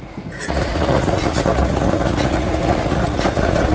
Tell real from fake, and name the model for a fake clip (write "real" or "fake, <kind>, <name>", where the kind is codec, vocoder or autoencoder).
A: fake, vocoder, Vocos